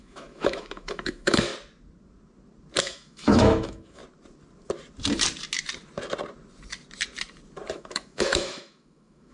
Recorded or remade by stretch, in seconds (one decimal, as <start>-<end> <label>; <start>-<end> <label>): 0.0-1.5 remade; 1.5-2.8 recorded; 2.8-4.0 remade; 4.0-7.7 recorded; 7.7-9.3 remade